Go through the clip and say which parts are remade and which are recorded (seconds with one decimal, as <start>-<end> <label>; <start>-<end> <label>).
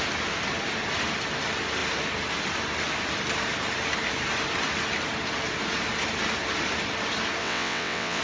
0.0-7.4 recorded; 7.4-8.2 remade